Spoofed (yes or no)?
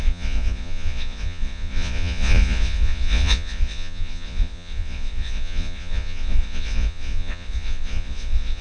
yes